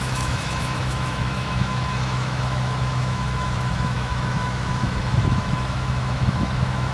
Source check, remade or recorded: remade